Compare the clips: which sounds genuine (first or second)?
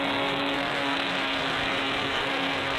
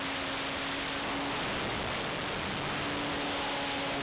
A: second